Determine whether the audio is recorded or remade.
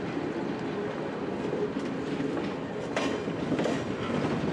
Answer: recorded